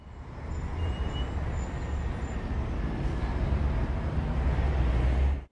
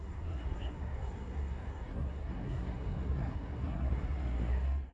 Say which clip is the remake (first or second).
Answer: second